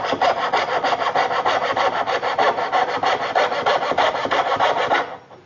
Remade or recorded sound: recorded